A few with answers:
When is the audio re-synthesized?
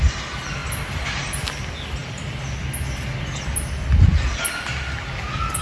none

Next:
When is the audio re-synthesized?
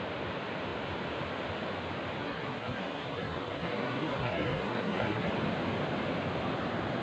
2.2-5.3 (codec, SNAC)